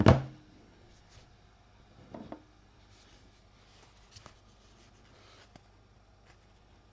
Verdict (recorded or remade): recorded